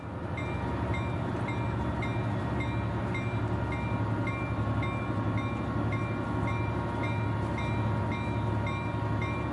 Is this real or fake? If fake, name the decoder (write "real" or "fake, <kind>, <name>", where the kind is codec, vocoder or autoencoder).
real